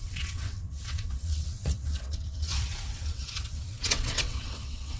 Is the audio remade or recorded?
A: remade